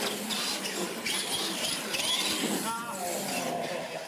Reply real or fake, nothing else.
real